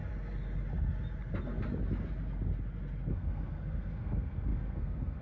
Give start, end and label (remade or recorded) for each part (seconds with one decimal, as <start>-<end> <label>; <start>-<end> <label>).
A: 0.0-3.1 recorded; 3.1-5.2 remade

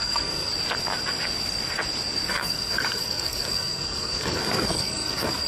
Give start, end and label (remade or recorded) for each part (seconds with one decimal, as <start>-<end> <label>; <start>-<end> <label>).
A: 0.0-0.5 remade; 0.5-2.3 recorded; 2.3-5.5 remade

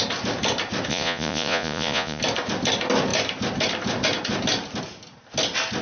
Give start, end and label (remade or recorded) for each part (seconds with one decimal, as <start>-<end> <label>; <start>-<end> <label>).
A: 0.0-0.9 recorded; 0.9-2.2 remade; 2.2-5.8 recorded

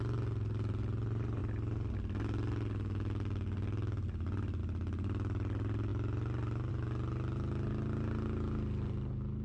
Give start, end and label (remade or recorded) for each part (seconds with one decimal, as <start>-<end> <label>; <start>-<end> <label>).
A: 0.0-9.4 recorded

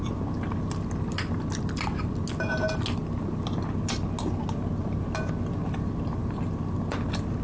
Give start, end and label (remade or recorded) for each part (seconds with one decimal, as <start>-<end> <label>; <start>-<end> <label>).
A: 0.0-7.4 recorded

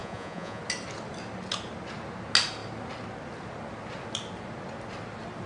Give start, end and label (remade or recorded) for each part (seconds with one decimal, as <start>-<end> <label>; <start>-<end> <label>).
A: 0.0-0.6 remade; 0.6-5.5 recorded